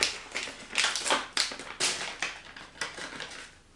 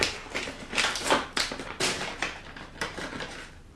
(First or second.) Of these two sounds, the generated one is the second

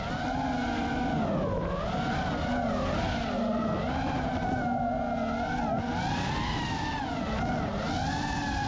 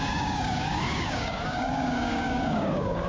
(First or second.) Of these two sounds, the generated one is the second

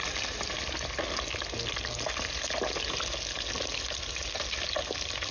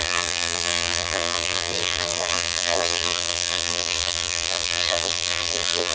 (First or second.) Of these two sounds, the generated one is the second